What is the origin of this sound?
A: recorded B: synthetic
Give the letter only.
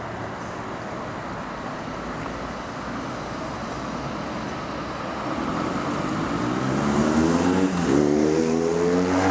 A